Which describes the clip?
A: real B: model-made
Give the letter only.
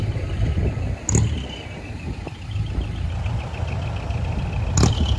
A